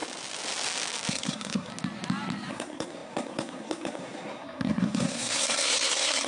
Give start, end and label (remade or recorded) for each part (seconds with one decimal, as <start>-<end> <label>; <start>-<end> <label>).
0.0-1.1 recorded; 1.1-1.7 remade; 1.7-2.5 recorded; 2.5-6.3 remade